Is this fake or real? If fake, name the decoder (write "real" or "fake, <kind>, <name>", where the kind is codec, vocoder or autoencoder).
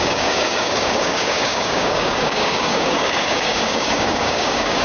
fake, codec, DAC